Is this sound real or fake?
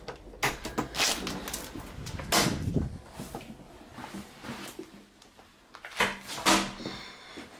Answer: real